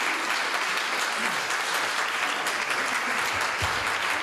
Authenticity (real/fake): real